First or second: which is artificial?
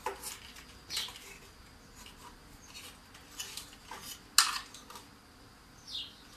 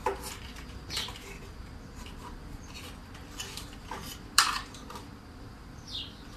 second